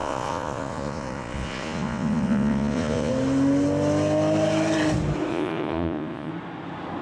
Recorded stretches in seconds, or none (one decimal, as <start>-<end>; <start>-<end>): 3.1-5.3; 6.3-7.0